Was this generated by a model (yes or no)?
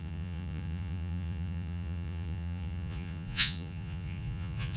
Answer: yes